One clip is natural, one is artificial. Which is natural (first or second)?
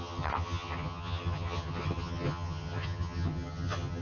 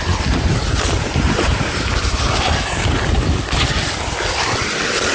second